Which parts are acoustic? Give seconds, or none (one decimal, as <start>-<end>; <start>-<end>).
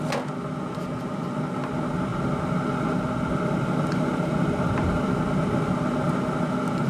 0.0-6.9